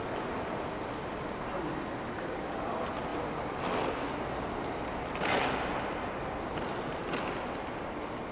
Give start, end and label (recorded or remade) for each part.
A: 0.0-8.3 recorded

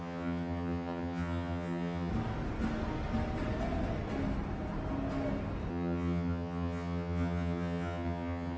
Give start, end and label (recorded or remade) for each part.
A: 0.0-2.1 remade; 2.1-5.7 recorded; 5.7-8.6 remade

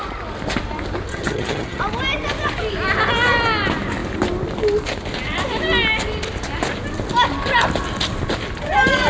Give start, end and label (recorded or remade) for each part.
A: 0.0-1.1 recorded; 1.1-1.8 remade; 1.8-9.1 recorded

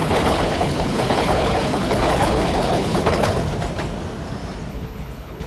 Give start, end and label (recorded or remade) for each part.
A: 0.0-3.5 remade; 3.5-4.7 recorded; 4.7-5.5 remade

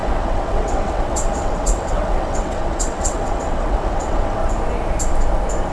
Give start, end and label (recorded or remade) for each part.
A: 0.0-4.4 remade; 4.4-5.7 recorded

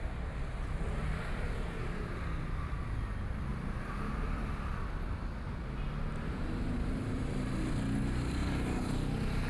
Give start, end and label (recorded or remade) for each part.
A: 0.0-3.5 recorded; 3.5-4.5 remade; 4.5-9.5 recorded